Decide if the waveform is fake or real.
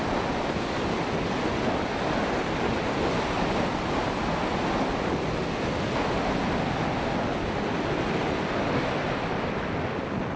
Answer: real